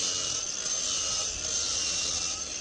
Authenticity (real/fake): real